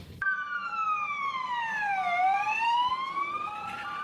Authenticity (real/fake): fake